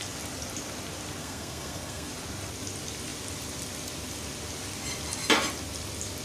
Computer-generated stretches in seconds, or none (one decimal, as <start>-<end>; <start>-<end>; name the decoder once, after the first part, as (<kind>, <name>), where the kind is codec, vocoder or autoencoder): 1.2-2.1 (codec, SNAC)